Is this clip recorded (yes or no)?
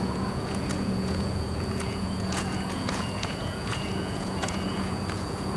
no